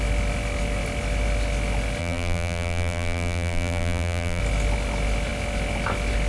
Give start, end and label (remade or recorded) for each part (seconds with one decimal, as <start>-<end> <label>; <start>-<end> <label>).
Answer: 0.0-2.0 recorded; 2.0-4.4 remade; 4.4-6.3 recorded